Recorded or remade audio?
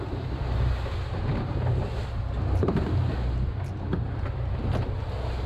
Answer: recorded